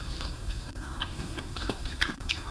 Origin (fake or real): fake